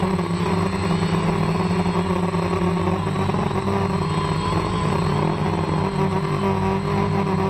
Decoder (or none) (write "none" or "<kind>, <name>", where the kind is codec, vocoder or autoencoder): none